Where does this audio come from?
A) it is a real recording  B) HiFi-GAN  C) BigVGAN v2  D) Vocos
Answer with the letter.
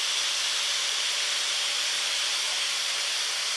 C